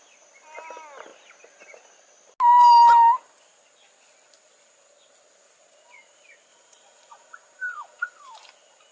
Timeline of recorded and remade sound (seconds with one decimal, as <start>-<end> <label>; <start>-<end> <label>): 0.0-6.5 recorded; 6.5-8.2 remade; 8.2-8.9 recorded